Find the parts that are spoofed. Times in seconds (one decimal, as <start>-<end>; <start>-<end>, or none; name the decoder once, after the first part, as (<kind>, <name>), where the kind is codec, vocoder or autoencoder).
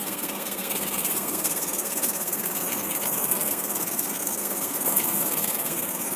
0.0-6.2 (codec, SNAC)